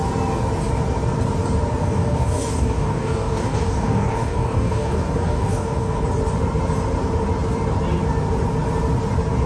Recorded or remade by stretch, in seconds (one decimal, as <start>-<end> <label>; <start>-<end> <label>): 0.0-1.8 recorded; 1.8-6.0 remade; 6.0-9.5 recorded